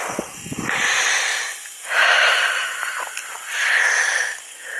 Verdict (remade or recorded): recorded